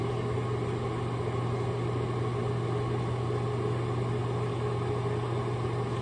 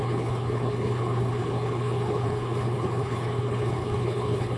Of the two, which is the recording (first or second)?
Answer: first